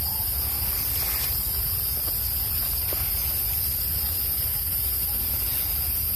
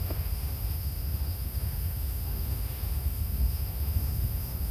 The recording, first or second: first